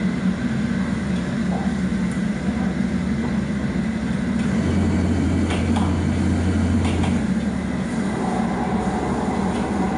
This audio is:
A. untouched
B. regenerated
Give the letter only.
A